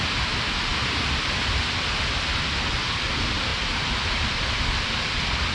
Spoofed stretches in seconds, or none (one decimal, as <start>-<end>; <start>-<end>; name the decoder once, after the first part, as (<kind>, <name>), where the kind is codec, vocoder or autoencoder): 3.5-4.2 (vocoder, BigVGAN v2)